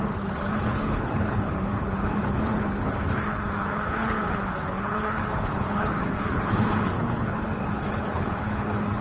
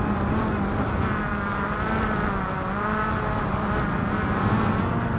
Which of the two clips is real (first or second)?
second